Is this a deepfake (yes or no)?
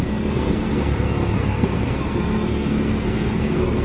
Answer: yes